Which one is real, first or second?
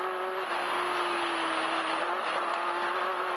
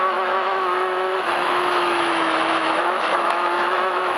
first